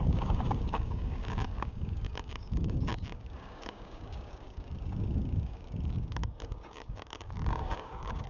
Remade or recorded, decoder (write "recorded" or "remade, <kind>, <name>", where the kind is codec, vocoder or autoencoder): remade, codec, DAC